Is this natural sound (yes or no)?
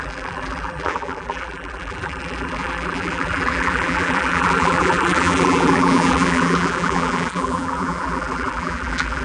no